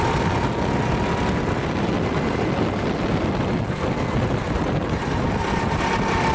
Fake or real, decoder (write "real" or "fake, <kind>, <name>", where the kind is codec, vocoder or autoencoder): real